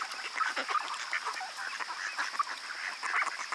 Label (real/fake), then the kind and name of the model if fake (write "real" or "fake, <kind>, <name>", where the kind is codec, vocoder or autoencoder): real